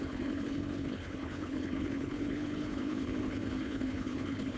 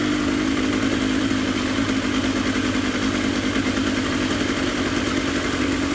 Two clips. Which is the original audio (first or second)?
second